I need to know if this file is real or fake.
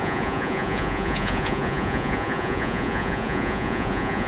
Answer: fake